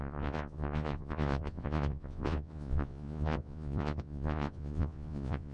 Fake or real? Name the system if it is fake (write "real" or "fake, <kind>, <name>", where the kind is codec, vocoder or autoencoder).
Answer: fake, vocoder, Vocos